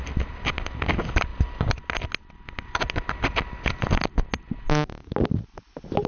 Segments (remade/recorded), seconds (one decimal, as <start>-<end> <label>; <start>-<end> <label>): 0.0-6.1 recorded